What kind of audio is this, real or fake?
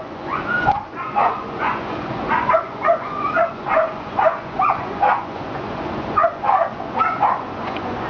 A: fake